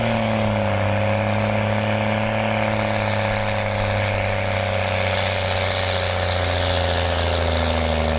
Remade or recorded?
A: recorded